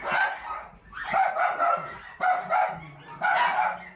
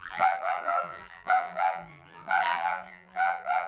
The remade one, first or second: second